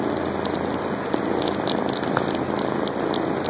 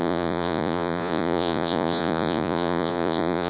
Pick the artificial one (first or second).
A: second